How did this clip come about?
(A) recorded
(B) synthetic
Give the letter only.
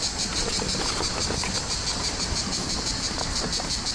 A